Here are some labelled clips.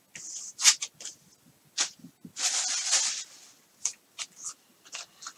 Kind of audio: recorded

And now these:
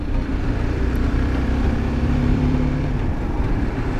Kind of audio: remade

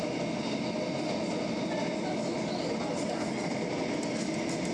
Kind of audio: recorded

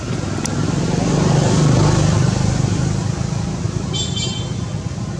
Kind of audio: recorded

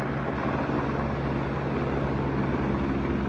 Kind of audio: recorded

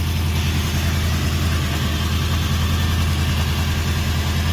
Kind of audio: recorded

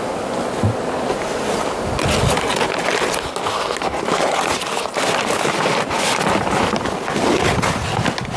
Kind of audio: recorded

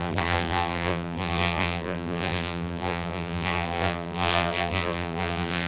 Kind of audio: remade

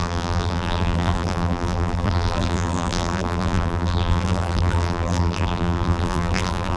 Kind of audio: remade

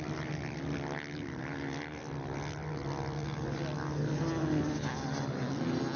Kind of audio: recorded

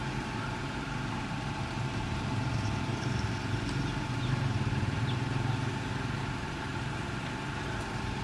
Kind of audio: remade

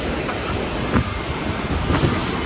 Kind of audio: remade